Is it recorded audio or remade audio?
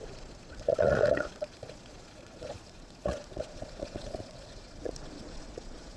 remade